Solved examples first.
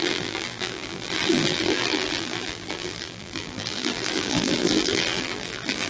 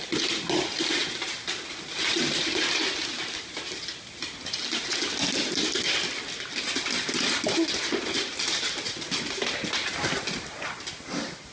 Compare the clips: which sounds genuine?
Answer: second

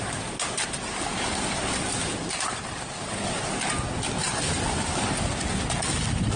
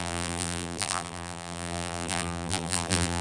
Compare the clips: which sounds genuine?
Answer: first